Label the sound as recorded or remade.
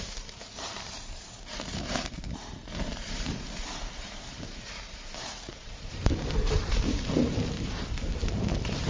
remade